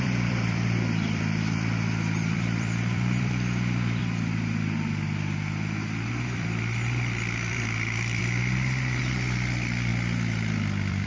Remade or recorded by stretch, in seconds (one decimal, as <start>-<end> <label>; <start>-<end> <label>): 0.0-4.0 remade; 4.0-6.1 recorded; 6.1-8.2 remade; 8.2-9.0 recorded; 9.0-9.9 remade; 9.9-10.5 recorded; 10.5-11.1 remade